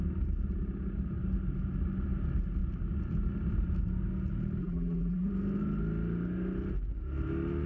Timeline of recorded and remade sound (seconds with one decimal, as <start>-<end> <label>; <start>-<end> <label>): 0.0-4.6 recorded; 4.6-5.3 remade; 5.3-7.7 recorded